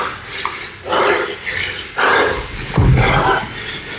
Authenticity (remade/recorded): recorded